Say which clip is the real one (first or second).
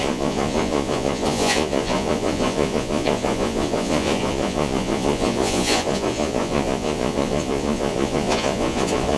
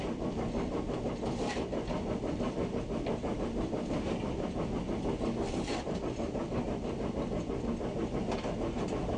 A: second